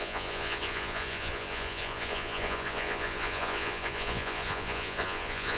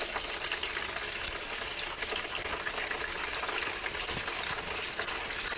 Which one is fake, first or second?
first